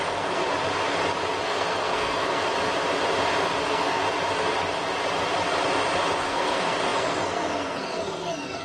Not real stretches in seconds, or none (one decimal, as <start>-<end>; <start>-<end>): 0.0-0.4; 1.4-2.4; 3.6-4.0; 6.2-8.6